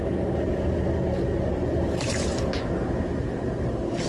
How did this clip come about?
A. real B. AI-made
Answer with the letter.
A